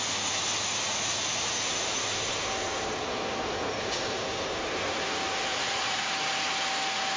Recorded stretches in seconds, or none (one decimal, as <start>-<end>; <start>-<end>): 0.0-5.5; 6.1-7.2